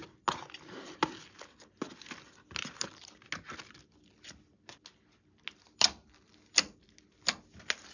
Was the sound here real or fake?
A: real